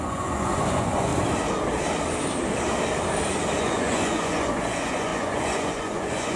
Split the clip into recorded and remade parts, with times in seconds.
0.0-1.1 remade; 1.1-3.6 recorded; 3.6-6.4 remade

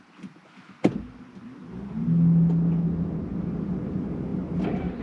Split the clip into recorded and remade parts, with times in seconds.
0.0-5.0 recorded

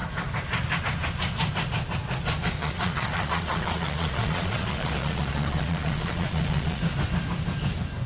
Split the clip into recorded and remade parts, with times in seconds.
0.0-2.6 recorded; 2.6-6.8 remade; 6.8-8.1 recorded

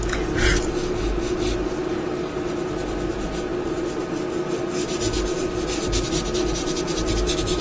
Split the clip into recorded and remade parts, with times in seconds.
0.0-7.6 recorded